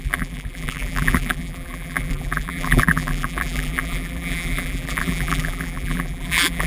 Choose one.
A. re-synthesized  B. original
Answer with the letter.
A